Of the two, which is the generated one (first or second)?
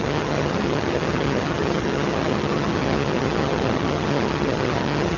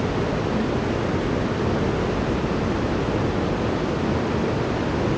first